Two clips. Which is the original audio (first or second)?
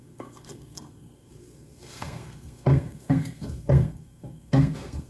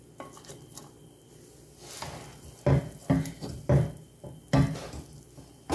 second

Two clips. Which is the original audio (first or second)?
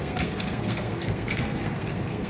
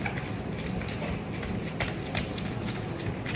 second